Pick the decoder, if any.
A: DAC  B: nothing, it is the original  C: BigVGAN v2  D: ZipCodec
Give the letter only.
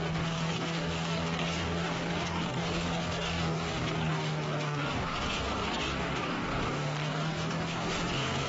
A